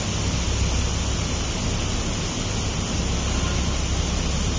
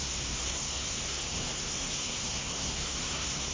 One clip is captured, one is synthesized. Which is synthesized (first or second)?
second